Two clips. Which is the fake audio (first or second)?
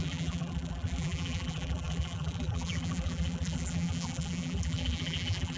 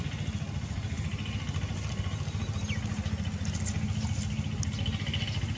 first